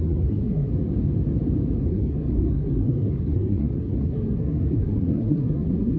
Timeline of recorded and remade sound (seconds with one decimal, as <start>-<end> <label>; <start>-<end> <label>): 0.0-0.7 remade; 0.7-1.8 recorded; 1.8-6.0 remade